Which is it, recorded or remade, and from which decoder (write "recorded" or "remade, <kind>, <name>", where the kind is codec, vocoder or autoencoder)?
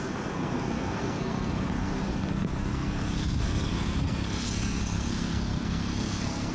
remade, codec, SNAC